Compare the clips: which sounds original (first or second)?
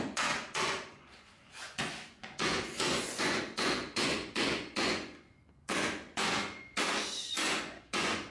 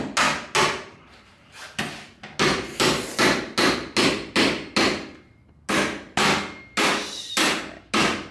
second